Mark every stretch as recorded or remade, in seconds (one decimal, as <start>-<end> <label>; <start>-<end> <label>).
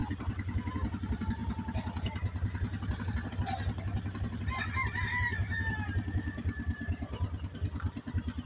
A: 0.0-8.5 recorded